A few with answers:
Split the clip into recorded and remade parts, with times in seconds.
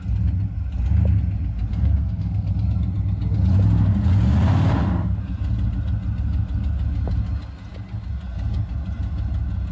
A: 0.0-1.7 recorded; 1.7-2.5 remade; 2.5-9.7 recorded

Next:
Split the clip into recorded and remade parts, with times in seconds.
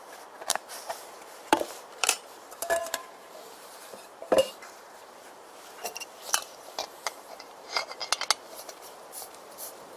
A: 0.0-8.0 remade; 8.0-8.7 recorded; 8.7-10.0 remade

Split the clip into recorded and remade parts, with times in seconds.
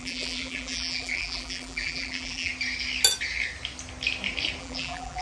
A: 0.0-2.5 remade; 2.5-4.6 recorded; 4.6-5.2 remade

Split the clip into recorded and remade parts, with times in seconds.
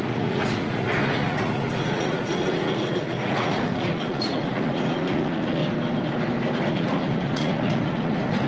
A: 0.0-5.6 remade; 5.6-6.7 recorded; 6.7-8.5 remade